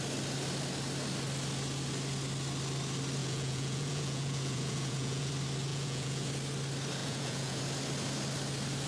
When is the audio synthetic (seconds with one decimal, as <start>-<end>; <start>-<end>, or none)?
3.2-5.3; 5.7-6.3; 7.0-7.6